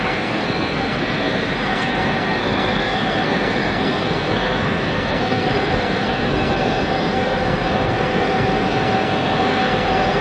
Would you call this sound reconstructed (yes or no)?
yes